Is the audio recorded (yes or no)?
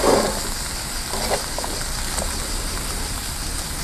yes